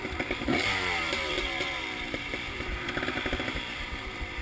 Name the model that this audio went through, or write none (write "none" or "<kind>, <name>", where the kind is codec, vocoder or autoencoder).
vocoder, BigVGAN v2